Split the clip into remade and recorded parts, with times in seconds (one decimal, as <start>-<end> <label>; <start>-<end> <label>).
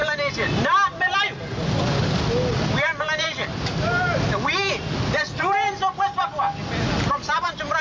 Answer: 0.0-7.8 recorded